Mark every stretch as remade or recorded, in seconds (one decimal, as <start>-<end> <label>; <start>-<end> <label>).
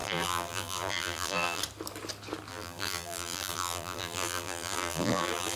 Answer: 0.0-1.6 remade; 1.6-2.5 recorded; 2.5-5.6 remade